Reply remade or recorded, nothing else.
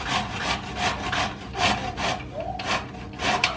recorded